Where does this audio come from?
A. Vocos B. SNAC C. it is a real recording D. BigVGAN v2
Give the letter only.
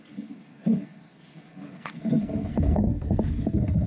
B